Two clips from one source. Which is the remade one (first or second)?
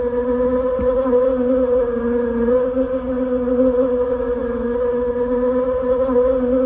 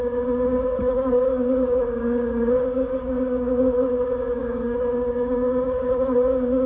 second